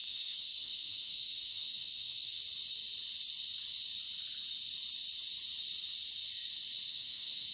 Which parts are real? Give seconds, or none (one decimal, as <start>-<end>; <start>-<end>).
2.4-6.9